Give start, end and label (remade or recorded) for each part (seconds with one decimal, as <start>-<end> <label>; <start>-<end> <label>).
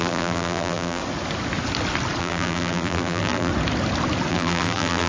0.0-1.0 remade; 1.0-2.2 recorded; 2.2-3.5 remade; 3.5-4.3 recorded; 4.3-5.1 remade